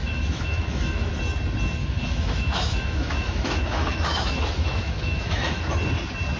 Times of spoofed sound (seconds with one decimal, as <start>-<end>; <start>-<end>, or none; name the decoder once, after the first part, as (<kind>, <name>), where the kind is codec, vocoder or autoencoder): 0.0-1.1 (autoencoder, DAC-VAE); 1.8-5.6